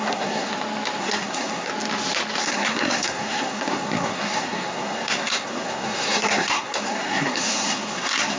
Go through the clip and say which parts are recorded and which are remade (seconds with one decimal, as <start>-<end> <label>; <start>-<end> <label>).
0.0-0.5 remade; 0.5-1.0 recorded; 1.0-1.7 remade; 1.7-2.4 recorded; 2.4-8.4 remade